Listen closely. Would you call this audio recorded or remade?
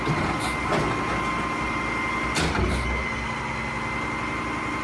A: recorded